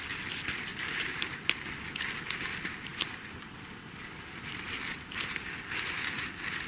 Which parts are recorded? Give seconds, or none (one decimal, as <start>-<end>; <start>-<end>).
0.0-0.7; 1.5-6.7